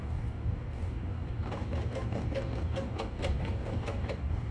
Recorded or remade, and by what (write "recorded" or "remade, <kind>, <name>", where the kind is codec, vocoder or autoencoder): remade, codec, DAC